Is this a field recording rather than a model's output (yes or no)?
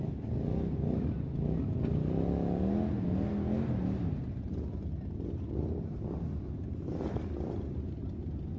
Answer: yes